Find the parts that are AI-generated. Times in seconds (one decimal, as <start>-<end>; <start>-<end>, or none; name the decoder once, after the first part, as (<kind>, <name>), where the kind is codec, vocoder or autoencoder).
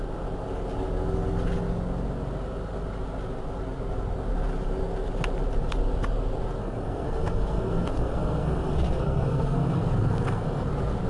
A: 6.6-10.7 (codec, SNAC)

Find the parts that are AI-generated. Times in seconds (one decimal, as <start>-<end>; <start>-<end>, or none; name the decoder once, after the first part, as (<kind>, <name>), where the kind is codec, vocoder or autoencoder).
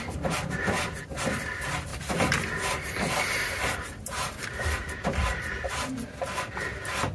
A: none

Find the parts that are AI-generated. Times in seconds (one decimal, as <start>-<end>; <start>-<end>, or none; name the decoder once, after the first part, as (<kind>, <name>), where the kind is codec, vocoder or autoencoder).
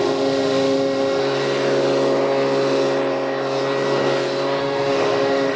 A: 0.0-1.2 (autoencoder, DAC-VAE); 4.6-5.6